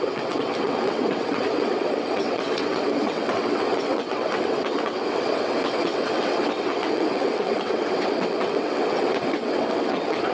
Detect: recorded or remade remade